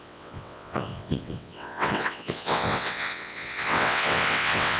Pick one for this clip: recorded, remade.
remade